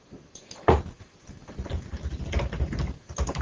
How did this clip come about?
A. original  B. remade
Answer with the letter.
A